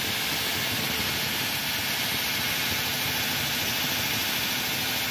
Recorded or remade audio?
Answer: recorded